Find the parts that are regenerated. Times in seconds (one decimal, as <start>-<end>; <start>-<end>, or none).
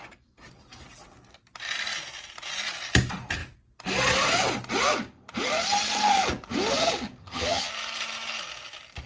7.2-7.7